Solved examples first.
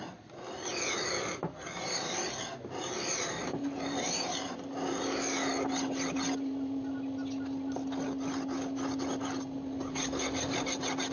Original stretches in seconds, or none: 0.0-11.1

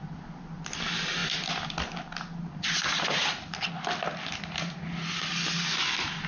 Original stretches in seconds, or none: 0.0-6.3

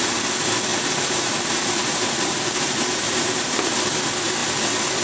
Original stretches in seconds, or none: 0.0-0.7; 3.7-5.0

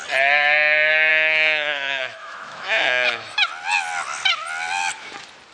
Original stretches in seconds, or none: 0.0-1.1; 3.5-5.5